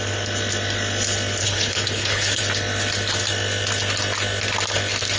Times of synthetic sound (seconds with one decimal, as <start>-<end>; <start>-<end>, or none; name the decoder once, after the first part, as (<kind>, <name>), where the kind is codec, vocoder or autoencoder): 1.4-2.4 (codec, HILCodec)